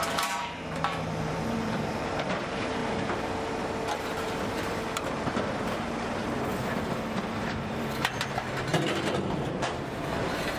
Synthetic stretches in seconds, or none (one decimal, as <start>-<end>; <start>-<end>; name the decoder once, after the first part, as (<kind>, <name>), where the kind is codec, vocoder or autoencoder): 0.0-2.8 (vocoder, BigVGAN v2); 4.2-10.6